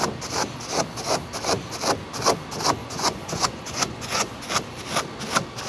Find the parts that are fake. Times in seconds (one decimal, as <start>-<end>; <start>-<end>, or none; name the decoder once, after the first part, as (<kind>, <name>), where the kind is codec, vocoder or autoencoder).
2.8-4.5 (vocoder, Vocos)